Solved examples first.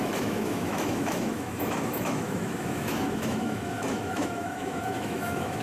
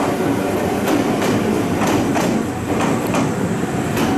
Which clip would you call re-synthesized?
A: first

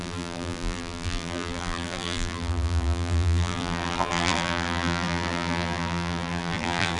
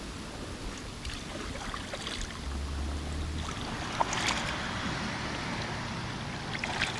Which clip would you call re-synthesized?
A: first